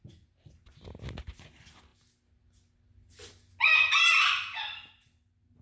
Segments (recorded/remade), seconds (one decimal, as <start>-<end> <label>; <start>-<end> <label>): 0.0-5.6 recorded